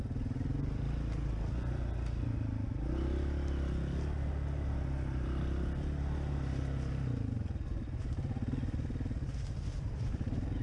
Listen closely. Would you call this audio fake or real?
real